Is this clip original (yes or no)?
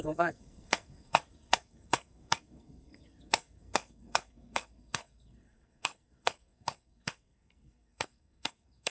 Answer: no